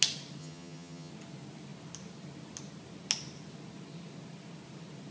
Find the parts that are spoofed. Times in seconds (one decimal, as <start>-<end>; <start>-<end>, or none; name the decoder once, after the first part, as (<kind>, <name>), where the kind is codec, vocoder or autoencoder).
0.4-1.1 (vocoder, HiFi-GAN)